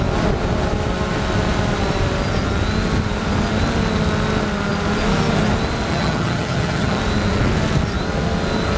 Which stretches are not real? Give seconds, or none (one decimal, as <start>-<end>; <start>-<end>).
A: 5.9-7.0